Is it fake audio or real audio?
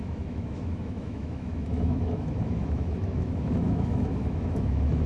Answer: fake